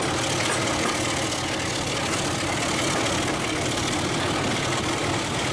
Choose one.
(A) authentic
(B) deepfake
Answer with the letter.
A